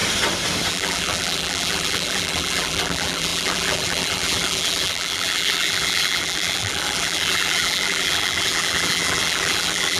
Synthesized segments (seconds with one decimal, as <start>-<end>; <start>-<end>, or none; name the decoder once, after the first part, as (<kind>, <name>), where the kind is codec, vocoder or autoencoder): 0.7-10.0 (vocoder, BigVGAN v2)